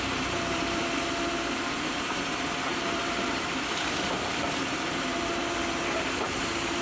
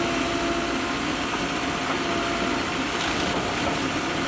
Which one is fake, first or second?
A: first